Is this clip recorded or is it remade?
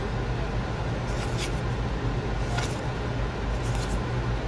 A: recorded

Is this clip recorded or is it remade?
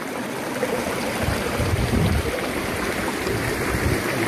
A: remade